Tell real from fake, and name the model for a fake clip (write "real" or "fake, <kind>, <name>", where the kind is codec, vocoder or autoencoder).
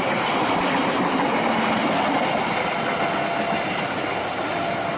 real